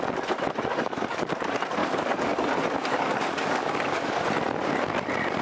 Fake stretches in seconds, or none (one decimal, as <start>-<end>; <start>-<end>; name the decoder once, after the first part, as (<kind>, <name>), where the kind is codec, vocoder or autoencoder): 0.7-1.3 (codec, DAC); 1.8-2.5; 2.9-4.2